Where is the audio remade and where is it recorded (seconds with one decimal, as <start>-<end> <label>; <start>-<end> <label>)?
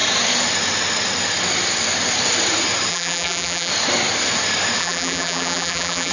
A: 0.0-2.9 recorded; 2.9-3.7 remade; 3.7-4.8 recorded; 4.8-6.1 remade